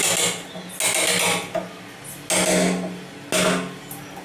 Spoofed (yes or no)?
no